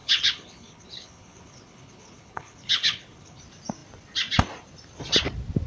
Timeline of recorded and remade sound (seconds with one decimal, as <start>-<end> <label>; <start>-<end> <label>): 0.0-3.4 remade; 3.4-5.7 recorded